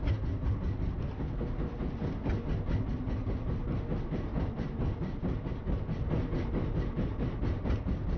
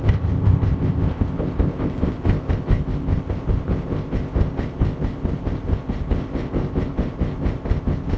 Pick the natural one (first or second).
first